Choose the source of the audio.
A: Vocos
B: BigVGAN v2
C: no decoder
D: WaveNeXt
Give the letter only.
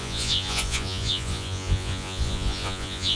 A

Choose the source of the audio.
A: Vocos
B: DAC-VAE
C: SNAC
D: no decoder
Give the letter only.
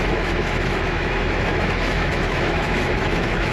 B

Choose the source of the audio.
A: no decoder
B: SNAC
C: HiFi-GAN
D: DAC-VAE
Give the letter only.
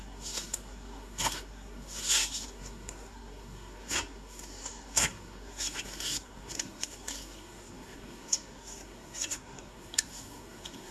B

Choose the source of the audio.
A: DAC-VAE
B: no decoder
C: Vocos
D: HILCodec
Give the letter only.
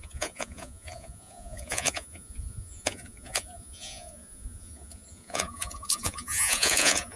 C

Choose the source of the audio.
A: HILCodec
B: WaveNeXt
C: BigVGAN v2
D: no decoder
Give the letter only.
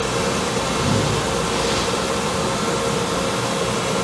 D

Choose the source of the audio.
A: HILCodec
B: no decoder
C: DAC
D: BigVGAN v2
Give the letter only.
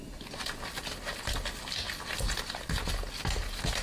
B